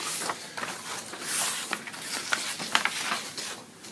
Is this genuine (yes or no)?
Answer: yes